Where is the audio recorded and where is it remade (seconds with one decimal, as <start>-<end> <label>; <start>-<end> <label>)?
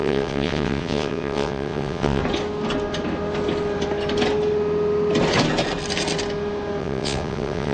0.0-2.2 remade; 2.2-6.8 recorded; 6.8-7.7 remade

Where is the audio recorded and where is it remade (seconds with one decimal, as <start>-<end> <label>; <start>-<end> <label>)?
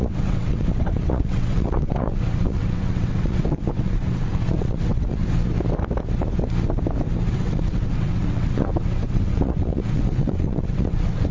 0.0-5.2 remade; 5.2-7.3 recorded; 7.3-11.3 remade